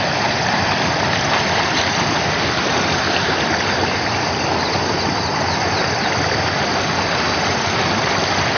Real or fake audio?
real